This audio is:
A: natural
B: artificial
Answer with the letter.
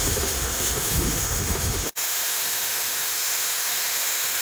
B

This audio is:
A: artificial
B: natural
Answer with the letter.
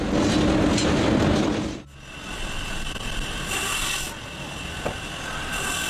B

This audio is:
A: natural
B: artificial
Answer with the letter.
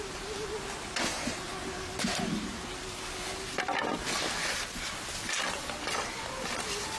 A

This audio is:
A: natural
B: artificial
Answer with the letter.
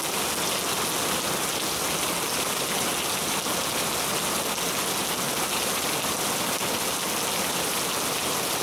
A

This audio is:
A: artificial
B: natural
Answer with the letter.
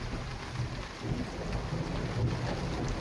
B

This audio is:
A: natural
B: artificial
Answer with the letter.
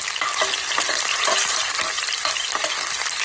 A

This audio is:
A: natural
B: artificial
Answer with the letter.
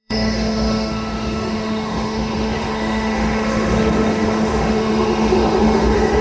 B